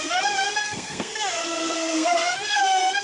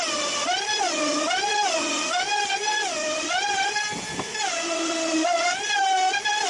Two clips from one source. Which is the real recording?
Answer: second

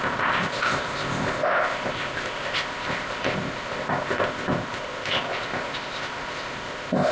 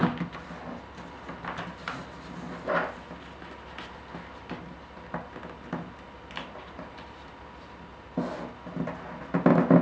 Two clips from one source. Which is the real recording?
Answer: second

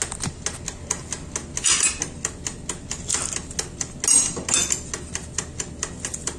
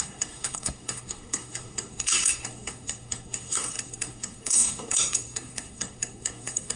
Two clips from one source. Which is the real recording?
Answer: first